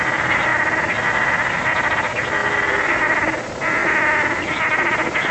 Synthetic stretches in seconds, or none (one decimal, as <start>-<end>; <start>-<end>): none